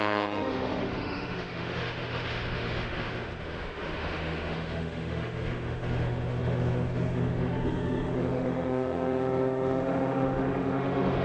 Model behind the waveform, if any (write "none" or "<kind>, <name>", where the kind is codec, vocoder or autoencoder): autoencoder, DAC-VAE